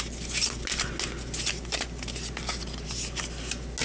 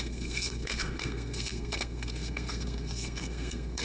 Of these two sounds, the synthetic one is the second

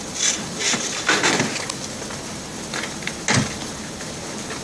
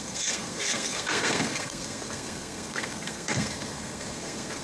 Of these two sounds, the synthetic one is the second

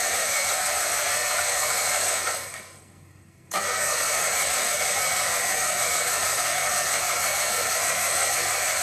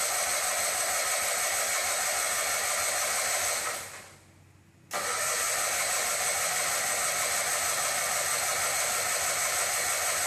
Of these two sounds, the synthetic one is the first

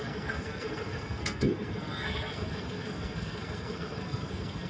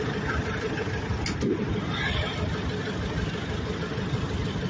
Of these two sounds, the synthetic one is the first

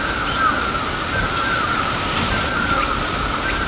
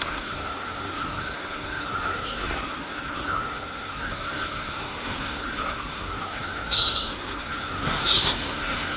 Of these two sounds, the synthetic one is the second